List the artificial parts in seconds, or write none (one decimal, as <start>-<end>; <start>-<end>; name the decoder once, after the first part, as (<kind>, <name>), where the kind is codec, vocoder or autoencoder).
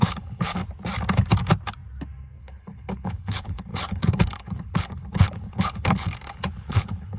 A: 0.0-0.6 (codec, HILCodec); 2.4-7.2